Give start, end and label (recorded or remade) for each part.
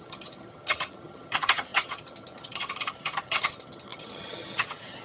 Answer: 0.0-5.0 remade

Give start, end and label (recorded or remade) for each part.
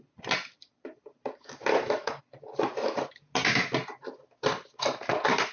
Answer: 0.0-1.7 recorded; 1.7-2.2 remade; 2.2-5.5 recorded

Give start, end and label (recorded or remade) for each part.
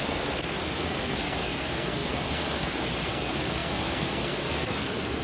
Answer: 0.0-5.2 remade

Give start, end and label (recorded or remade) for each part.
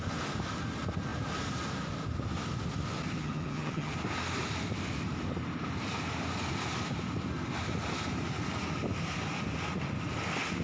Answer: 0.0-3.2 recorded; 3.2-3.9 remade; 3.9-10.6 recorded